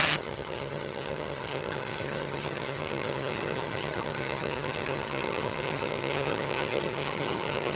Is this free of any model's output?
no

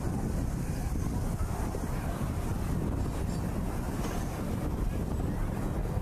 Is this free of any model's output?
yes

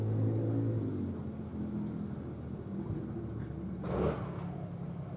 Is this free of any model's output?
yes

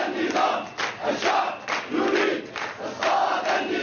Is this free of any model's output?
yes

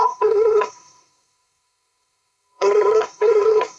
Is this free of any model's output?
no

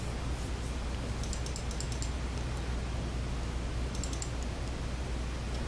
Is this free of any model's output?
yes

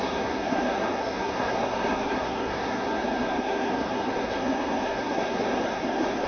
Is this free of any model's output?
no